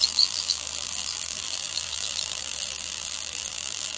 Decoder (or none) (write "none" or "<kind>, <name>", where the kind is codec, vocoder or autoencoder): vocoder, BigVGAN v2